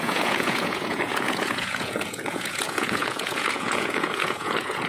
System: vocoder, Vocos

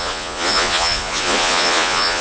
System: vocoder, Vocos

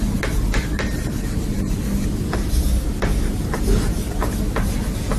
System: none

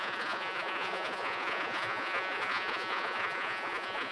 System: vocoder, Vocos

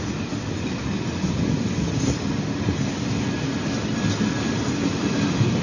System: none